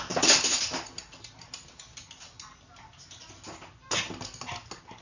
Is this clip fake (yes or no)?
no